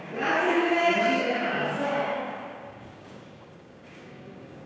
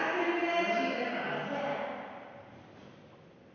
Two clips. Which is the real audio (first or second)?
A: second